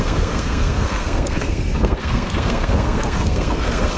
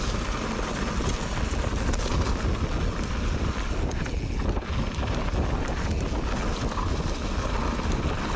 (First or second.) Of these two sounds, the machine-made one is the first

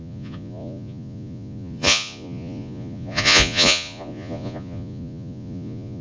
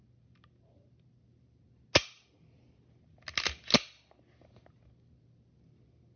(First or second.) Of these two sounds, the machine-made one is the first